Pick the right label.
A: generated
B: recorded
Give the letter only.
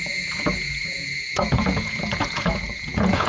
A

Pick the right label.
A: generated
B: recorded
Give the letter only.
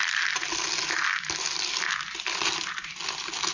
B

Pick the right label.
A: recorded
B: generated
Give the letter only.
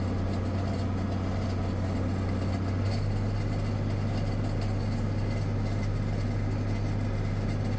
A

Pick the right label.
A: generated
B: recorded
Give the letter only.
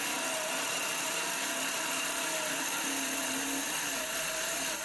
B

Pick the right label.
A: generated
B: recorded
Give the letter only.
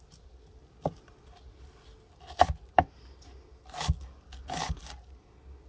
B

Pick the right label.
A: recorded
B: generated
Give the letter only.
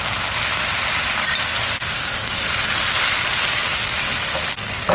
A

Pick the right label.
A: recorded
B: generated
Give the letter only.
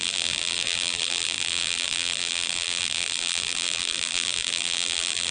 B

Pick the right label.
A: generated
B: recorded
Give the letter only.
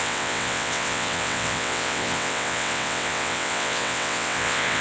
A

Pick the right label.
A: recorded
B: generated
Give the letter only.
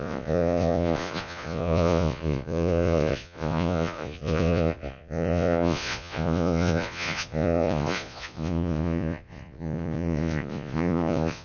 B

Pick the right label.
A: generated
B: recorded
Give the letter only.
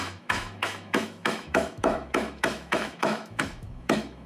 A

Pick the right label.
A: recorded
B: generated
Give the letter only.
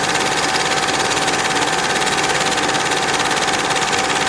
A